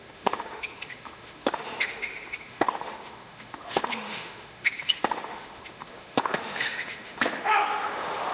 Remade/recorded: remade